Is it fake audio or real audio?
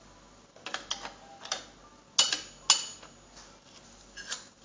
real